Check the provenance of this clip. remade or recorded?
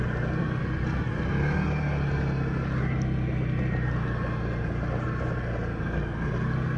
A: recorded